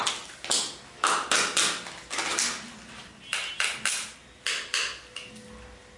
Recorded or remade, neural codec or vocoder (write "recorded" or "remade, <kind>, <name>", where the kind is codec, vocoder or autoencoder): recorded